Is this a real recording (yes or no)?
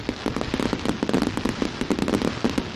yes